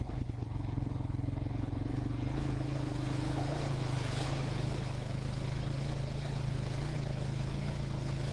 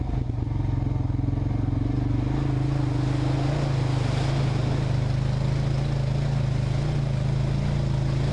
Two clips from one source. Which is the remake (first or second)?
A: first